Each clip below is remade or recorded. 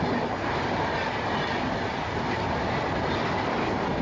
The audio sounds recorded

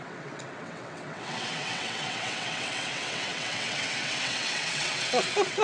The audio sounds remade